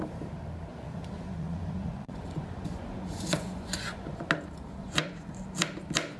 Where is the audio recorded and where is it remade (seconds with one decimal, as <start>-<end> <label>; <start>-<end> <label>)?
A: 0.0-0.7 recorded; 0.7-4.3 remade; 4.3-4.8 recorded; 4.8-5.3 remade; 5.3-6.2 recorded